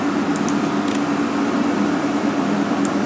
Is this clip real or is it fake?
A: real